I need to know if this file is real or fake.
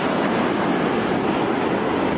real